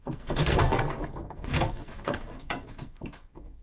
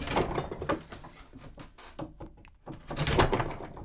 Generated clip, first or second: first